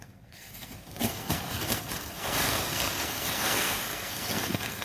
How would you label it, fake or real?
fake